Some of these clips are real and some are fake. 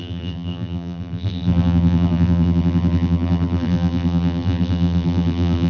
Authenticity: fake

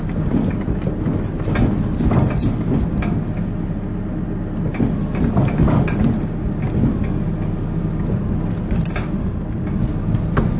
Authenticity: real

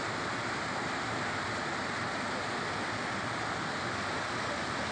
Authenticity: real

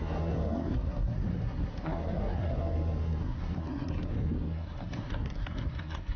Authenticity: fake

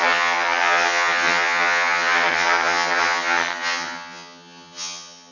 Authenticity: fake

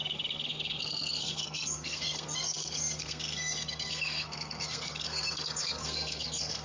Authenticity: fake